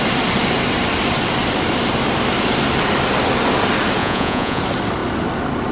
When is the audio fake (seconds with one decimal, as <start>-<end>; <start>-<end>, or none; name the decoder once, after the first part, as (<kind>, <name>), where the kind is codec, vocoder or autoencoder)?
4.0-4.6 (vocoder, Vocos)